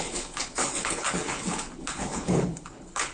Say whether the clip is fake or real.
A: fake